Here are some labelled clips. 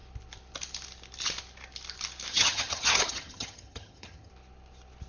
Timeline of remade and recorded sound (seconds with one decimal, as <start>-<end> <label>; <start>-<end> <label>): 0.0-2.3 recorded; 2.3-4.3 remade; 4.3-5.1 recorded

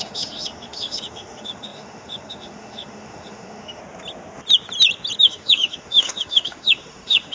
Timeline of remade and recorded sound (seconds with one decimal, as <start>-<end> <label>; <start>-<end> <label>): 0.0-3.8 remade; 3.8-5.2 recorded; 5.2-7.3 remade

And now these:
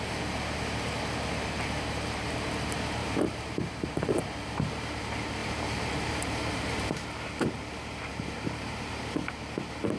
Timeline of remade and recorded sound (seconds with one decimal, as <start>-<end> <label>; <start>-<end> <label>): 0.0-3.0 recorded; 3.0-4.5 remade; 4.5-5.4 recorded; 5.4-6.9 remade; 6.9-8.1 recorded; 8.1-8.9 remade; 8.9-10.0 recorded

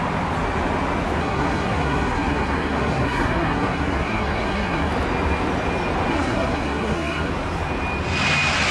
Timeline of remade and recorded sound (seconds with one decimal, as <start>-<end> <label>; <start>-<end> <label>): 0.0-1.2 recorded; 1.2-4.9 remade; 4.9-6.1 recorded; 6.1-7.3 remade; 7.3-8.7 recorded